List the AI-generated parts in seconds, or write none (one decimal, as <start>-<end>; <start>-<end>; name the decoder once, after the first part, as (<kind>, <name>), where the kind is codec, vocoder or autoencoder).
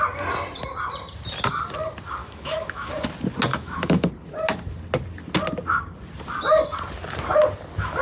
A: 2.2-2.9 (autoencoder, DAC-VAE); 3.5-4.1